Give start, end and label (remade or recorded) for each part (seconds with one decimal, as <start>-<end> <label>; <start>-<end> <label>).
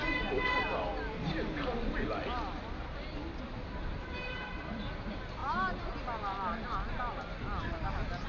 0.0-8.3 recorded